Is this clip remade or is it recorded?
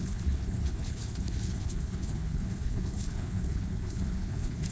remade